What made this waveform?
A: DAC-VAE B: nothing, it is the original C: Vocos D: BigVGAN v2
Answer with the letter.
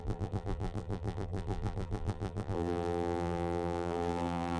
D